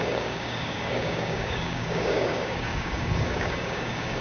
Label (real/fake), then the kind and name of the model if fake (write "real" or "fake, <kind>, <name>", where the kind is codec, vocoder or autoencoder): fake, codec, DAC